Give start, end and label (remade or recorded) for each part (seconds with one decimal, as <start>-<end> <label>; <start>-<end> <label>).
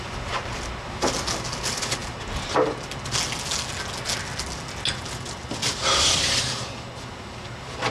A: 0.0-7.9 recorded